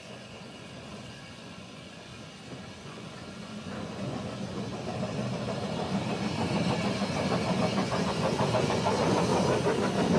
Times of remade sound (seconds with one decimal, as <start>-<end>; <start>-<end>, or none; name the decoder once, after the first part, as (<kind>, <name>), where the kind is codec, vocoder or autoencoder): 0.0-2.1 (vocoder, Vocos); 2.8-4.7; 7.6-9.3